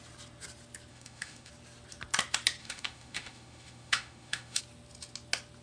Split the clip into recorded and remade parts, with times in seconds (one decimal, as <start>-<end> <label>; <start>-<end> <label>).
0.0-0.9 recorded; 0.9-1.5 remade; 1.5-2.6 recorded; 2.6-4.6 remade; 4.6-5.6 recorded